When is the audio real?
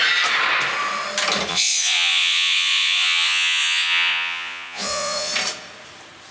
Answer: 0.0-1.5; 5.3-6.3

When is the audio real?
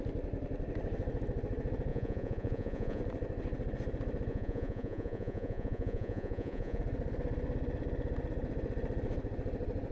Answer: 0.0-1.9; 3.0-4.3; 6.8-9.9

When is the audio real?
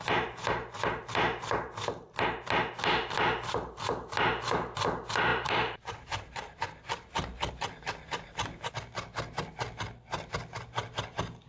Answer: 0.0-5.3; 7.5-11.5